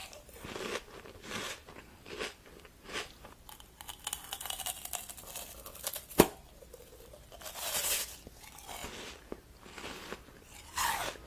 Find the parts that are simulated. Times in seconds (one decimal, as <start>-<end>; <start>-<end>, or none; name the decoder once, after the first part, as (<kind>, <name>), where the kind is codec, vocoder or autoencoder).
none